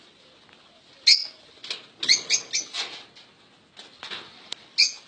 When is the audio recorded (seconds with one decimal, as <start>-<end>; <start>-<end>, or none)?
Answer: 0.0-5.1